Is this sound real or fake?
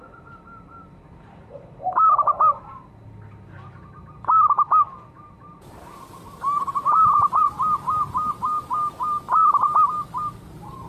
real